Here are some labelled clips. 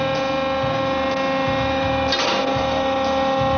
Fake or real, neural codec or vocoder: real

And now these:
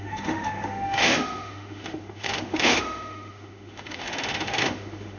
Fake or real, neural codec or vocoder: fake, autoencoder, DAC-VAE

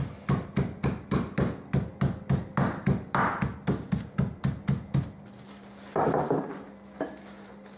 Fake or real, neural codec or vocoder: real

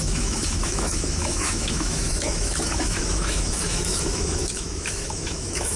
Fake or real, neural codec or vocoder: fake, autoencoder, DAC-VAE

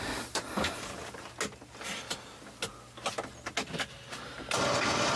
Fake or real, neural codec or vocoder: real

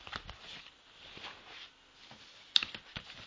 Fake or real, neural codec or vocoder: real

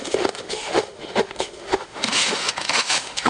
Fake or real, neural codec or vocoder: fake, autoencoder, DAC-VAE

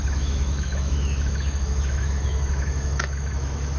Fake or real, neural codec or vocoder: fake, autoencoder, DAC-VAE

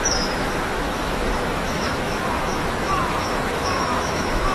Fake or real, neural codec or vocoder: fake, autoencoder, DAC-VAE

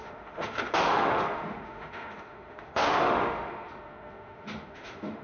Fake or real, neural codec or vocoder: fake, autoencoder, DAC-VAE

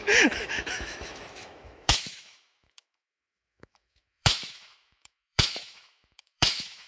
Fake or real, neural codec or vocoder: fake, autoencoder, DAC-VAE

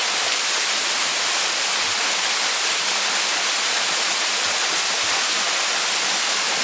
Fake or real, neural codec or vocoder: real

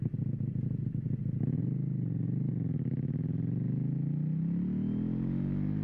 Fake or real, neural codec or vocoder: real